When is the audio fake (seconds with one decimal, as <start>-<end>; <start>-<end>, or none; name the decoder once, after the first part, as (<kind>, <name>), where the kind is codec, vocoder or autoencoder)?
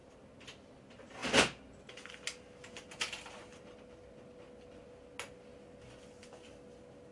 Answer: none